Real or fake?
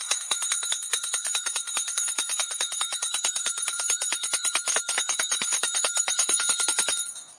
fake